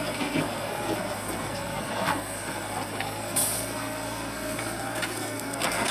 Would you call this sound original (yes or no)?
no